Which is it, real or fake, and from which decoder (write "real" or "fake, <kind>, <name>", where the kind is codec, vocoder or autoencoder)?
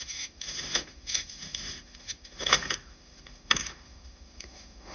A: fake, autoencoder, DAC-VAE